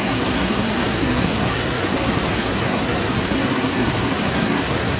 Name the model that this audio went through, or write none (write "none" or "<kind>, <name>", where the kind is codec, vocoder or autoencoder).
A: codec, SNAC